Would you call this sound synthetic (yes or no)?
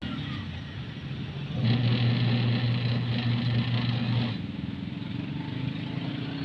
no